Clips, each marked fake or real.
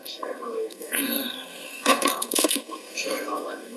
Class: fake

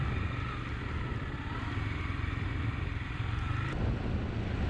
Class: real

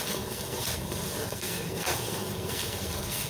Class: fake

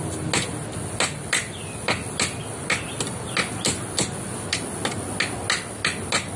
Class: real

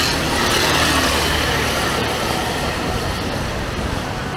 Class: real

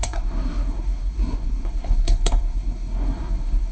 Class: fake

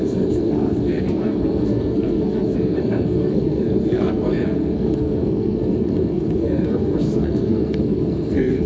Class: fake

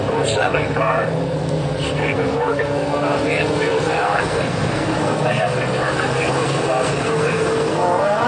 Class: fake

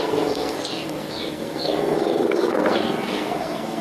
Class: fake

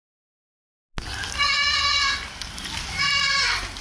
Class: real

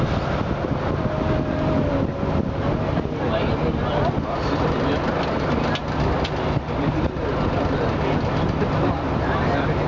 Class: real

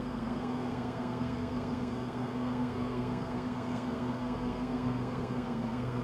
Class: fake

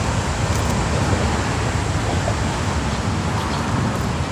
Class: real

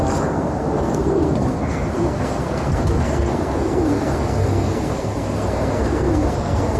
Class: fake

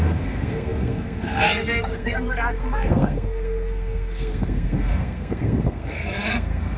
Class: fake